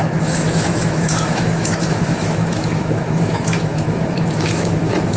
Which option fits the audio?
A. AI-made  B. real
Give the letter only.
A